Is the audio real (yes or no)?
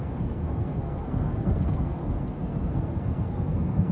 no